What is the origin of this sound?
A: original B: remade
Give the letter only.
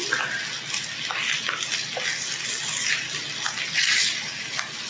A